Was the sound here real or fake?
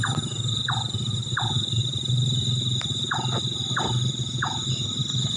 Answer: real